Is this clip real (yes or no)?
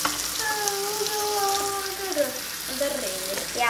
yes